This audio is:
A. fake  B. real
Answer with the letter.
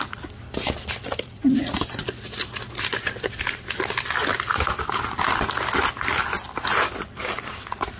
B